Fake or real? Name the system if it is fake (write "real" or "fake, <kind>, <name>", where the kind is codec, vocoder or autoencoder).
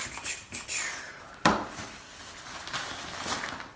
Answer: real